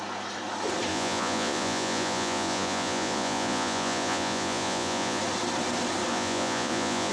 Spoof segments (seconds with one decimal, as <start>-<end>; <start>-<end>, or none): 0.9-5.2; 6.1-7.1

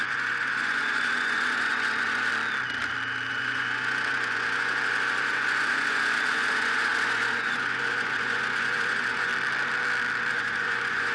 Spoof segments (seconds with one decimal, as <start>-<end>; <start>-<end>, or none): 0.0-2.3; 3.3-9.3; 10.3-11.1

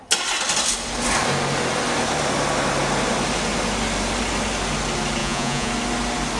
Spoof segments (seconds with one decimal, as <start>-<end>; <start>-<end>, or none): 5.2-5.7